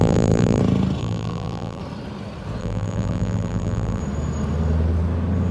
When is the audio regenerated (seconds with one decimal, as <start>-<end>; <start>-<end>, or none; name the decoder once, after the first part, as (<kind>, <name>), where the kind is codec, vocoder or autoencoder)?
0.0-0.6 (vocoder, BigVGAN v2); 1.0-1.8; 2.6-4.0